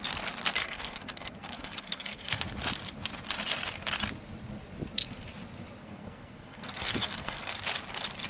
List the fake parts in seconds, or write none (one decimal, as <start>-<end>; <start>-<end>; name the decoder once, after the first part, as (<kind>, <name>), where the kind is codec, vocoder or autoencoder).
0.6-2.4 (codec, SNAC); 5.8-7.5